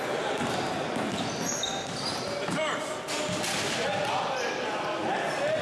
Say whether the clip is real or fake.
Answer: real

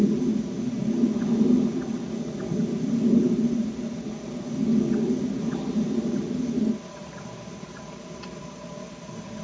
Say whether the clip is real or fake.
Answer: real